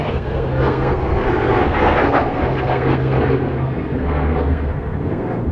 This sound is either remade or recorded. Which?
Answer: remade